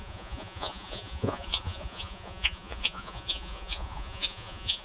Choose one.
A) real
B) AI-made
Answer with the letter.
B